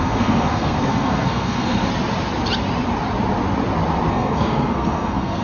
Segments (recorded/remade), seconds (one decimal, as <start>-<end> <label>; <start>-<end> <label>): 0.0-1.9 remade; 1.9-4.1 recorded; 4.1-5.4 remade